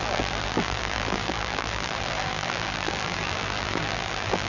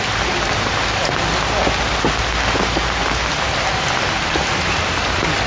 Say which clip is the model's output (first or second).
first